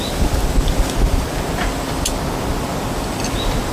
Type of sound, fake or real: real